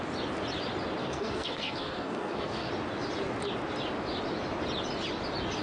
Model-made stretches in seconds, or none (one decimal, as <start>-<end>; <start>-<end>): 1.0-2.7